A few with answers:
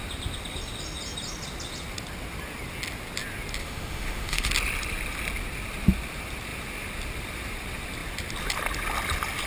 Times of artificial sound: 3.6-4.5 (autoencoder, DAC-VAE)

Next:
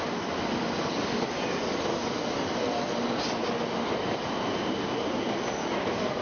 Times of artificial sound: none

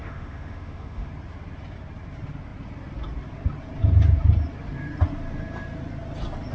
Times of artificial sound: 0.0-1.1 (autoencoder, DAC-VAE)

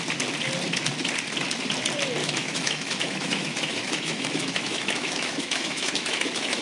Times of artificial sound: 2.2-6.6 (autoencoder, DAC-VAE)

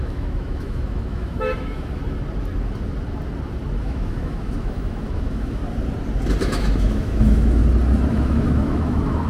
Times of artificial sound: 0.0-2.0 (autoencoder, DAC-VAE); 3.8-5.6; 6.4-7.6; 8.1-9.3

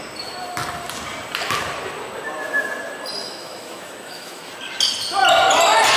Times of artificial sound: 3.2-4.5 (autoencoder, DAC-VAE)